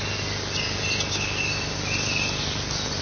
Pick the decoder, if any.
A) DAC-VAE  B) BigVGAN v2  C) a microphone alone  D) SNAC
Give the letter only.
C